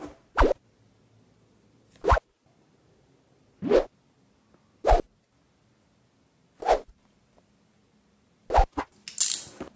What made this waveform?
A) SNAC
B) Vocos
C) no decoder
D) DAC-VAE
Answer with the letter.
C